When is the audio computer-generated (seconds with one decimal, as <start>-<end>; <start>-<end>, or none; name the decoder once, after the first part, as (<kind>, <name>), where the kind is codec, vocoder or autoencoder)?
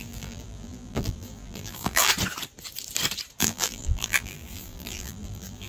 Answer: 0.0-2.1 (vocoder, BigVGAN v2); 3.4-5.7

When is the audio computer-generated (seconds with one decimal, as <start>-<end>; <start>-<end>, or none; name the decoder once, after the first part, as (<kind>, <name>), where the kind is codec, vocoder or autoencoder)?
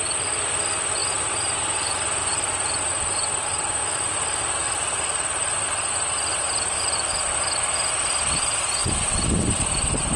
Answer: 1.0-2.9 (vocoder, BigVGAN v2)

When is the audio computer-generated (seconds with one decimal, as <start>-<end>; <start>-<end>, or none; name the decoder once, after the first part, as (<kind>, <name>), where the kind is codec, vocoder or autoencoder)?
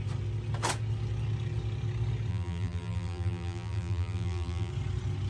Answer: 2.3-4.7 (vocoder, BigVGAN v2)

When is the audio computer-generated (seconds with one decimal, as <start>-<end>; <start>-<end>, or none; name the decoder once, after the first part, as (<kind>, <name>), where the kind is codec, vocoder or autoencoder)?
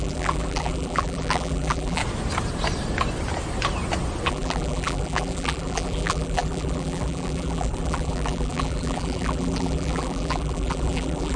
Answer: 0.0-2.0 (vocoder, BigVGAN v2); 4.3-11.4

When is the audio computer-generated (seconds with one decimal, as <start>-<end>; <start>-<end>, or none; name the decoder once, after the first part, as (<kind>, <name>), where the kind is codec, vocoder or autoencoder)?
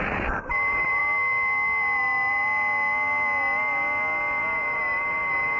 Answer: 0.0-1.0 (vocoder, BigVGAN v2); 4.4-5.6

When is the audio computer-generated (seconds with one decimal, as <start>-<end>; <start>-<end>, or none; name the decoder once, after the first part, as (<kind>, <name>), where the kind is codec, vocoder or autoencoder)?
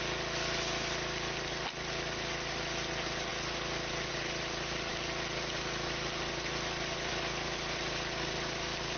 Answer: none